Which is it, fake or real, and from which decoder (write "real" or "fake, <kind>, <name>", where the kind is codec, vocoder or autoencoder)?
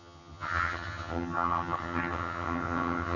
fake, vocoder, HiFi-GAN